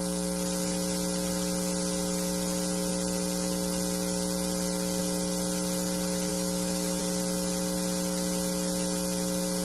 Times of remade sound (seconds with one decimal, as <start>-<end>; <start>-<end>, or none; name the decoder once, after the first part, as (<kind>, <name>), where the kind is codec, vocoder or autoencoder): 6.3-7.0 (autoencoder, DAC-VAE)

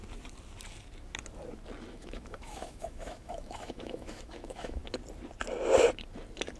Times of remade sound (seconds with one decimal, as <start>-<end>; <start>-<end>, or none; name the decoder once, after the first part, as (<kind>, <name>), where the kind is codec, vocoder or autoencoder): 1.9-4.8 (autoencoder, DAC-VAE)

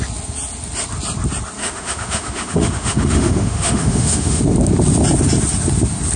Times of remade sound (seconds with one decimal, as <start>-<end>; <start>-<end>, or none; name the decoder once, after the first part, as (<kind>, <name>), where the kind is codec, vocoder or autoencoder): 1.6-4.4 (autoencoder, DAC-VAE)

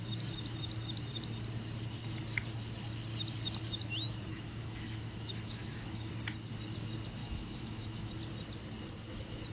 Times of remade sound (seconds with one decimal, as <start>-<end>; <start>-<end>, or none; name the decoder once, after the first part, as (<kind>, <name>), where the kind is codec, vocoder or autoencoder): 4.3-6.1 (autoencoder, DAC-VAE); 7.2-8.1

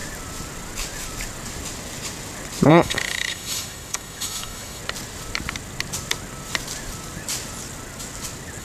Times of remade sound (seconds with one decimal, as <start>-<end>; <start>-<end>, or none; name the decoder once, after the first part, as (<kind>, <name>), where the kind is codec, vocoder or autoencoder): 2.7-4.8 (autoencoder, DAC-VAE)

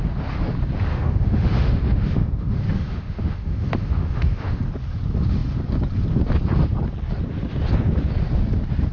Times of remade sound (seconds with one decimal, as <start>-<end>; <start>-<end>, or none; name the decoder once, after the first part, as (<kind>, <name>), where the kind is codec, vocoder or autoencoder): 0.9-4.6 (autoencoder, DAC-VAE)

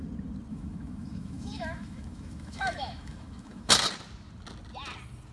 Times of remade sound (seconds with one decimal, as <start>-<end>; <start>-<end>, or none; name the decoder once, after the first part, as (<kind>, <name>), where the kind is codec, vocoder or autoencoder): 0.5-3.7 (autoencoder, DAC-VAE)

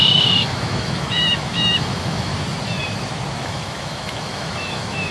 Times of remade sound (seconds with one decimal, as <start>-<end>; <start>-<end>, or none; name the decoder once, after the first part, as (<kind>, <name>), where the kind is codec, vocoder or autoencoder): 0.0-2.3 (autoencoder, DAC-VAE); 3.4-5.1